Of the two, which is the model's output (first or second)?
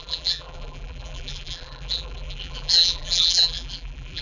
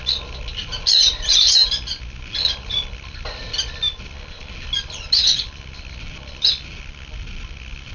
first